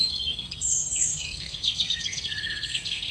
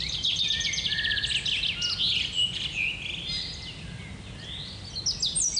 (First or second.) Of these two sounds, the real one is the second